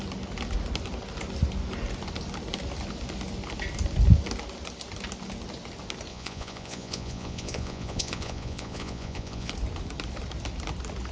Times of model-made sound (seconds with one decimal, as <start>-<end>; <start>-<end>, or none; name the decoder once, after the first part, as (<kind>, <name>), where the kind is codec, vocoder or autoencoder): 6.1-9.5 (vocoder, Vocos)